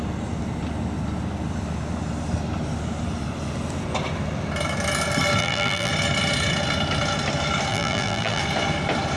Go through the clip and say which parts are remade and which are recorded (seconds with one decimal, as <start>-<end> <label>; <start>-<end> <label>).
0.0-5.4 recorded; 5.4-5.9 remade; 5.9-7.7 recorded; 7.7-8.4 remade; 8.4-9.2 recorded